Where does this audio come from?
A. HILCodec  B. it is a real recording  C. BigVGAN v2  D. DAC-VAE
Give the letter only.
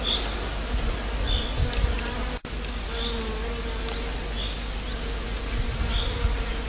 B